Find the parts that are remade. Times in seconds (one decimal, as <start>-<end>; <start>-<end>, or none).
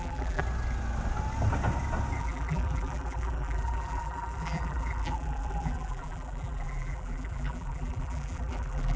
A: 0.0-0.4; 2.2-9.0